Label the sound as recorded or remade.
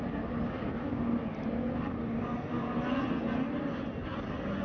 recorded